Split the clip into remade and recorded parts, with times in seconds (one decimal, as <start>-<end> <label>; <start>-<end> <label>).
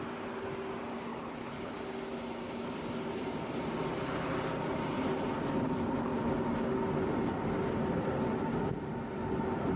0.0-1.1 recorded; 1.1-1.7 remade; 1.7-9.8 recorded